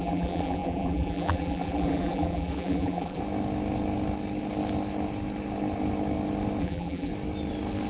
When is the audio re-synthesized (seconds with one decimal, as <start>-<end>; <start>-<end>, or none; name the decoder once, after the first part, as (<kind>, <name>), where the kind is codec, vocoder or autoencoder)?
0.0-3.2 (vocoder, BigVGAN v2); 6.6-7.1